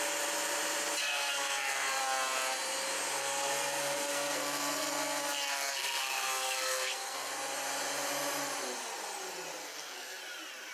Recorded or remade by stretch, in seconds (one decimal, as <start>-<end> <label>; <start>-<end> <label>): 0.0-1.0 recorded; 1.0-2.0 remade; 2.0-3.2 recorded; 3.2-7.3 remade; 7.3-9.6 recorded; 9.6-10.2 remade; 10.2-10.7 recorded